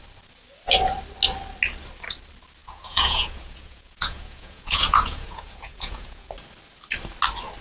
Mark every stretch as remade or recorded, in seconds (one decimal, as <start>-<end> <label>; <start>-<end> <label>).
0.0-2.6 recorded; 2.6-6.3 remade; 6.3-7.6 recorded